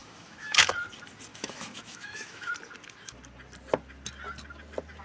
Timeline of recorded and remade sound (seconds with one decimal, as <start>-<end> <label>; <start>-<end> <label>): 0.0-0.7 remade; 0.7-1.3 recorded; 1.3-2.5 remade; 2.5-5.0 recorded